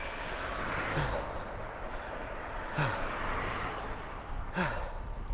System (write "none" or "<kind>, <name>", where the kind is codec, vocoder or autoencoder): none